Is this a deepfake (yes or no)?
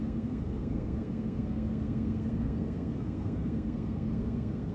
yes